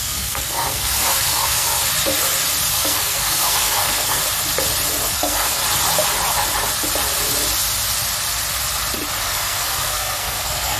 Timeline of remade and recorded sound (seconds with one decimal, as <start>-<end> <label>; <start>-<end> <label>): 0.0-1.8 remade; 1.8-2.7 recorded; 2.7-4.2 remade; 4.2-5.1 recorded; 5.1-5.6 remade; 5.6-9.2 recorded; 9.2-10.8 remade

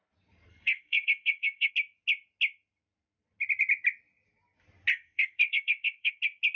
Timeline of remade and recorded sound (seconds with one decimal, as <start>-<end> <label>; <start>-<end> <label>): 0.0-0.5 recorded; 0.5-1.7 remade; 1.7-4.9 recorded; 4.9-6.1 remade; 6.1-6.6 recorded

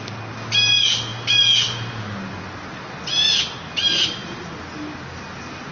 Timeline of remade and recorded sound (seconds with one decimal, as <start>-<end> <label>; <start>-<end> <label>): 0.0-5.7 recorded

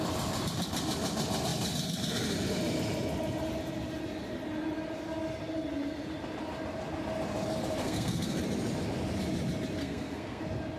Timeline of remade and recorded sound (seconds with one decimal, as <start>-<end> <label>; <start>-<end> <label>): 0.0-7.8 recorded; 7.8-8.4 remade; 8.4-9.8 recorded; 9.8-10.4 remade; 10.4-10.8 recorded

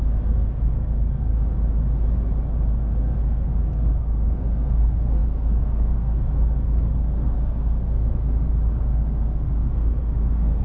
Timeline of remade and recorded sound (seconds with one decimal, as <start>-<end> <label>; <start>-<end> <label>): 0.0-1.3 remade; 1.3-2.8 recorded; 2.8-10.6 remade

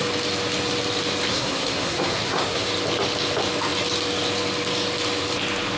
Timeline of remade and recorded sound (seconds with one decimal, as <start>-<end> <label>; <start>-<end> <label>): 0.0-1.3 recorded; 1.3-2.7 remade; 2.7-5.8 recorded

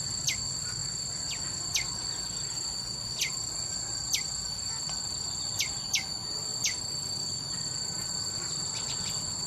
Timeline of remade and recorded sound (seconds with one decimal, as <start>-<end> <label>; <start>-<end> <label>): 0.0-9.5 recorded